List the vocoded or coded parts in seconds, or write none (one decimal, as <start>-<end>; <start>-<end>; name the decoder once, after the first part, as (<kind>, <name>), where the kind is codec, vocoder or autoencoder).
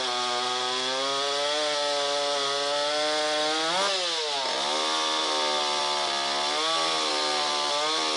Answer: none